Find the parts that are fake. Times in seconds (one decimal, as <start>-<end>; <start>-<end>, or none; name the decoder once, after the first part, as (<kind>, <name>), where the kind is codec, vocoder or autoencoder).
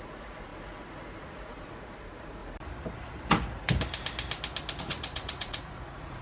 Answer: 0.0-2.4 (vocoder, Vocos); 4.8-6.2